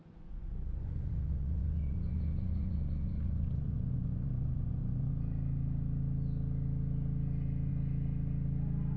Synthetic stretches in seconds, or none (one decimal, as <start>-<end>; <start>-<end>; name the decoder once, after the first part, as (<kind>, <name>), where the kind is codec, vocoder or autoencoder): 0.0-5.1 (vocoder, Vocos)